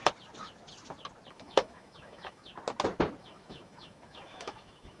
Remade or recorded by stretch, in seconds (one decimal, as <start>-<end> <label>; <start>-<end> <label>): 0.0-1.3 recorded; 1.3-2.5 remade; 2.5-3.2 recorded; 3.2-5.0 remade